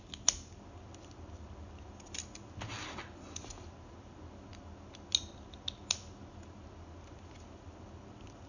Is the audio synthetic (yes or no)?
no